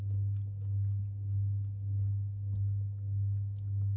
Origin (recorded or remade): recorded